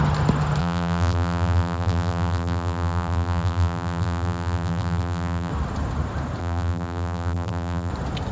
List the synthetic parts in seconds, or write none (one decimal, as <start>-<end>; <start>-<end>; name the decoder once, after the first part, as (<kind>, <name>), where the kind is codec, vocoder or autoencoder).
0.6-5.5 (vocoder, BigVGAN v2); 6.4-7.9